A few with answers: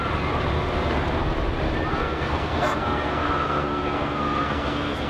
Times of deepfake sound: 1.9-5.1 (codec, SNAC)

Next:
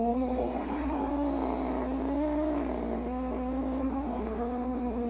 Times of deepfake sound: 0.0-1.1 (codec, SNAC); 3.8-5.1

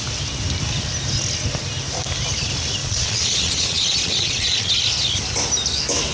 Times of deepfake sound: 2.8-4.7 (vocoder, Vocos)

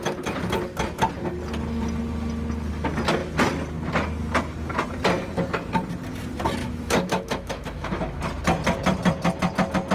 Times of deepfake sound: 6.6-8.2 (autoencoder, DAC-VAE)